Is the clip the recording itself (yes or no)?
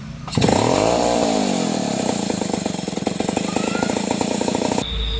yes